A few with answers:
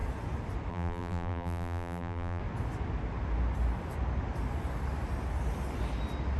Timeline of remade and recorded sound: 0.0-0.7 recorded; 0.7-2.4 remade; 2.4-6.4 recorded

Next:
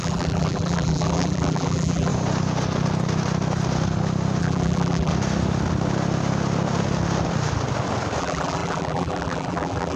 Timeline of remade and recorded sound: 0.0-2.1 remade; 2.1-4.4 recorded; 4.4-5.1 remade; 5.1-8.2 recorded; 8.2-10.0 remade

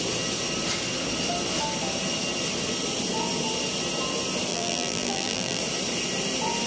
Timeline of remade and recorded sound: 0.0-4.5 recorded; 4.5-5.6 remade; 5.6-6.7 recorded

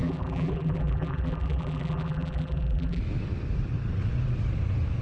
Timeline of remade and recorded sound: 0.0-3.0 remade; 3.0-5.0 recorded

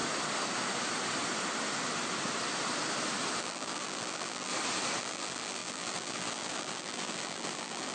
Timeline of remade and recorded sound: 0.0-3.4 recorded; 3.4-4.5 remade; 4.5-5.0 recorded; 5.0-7.9 remade

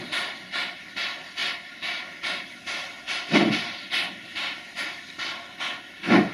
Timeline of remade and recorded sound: 0.0-6.3 recorded

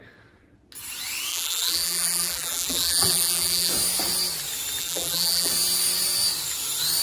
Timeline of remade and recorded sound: 0.0-1.3 recorded; 1.3-3.7 remade; 3.7-4.8 recorded; 4.8-5.5 remade; 5.5-7.0 recorded

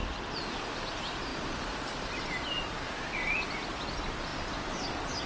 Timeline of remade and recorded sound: 0.0-5.3 recorded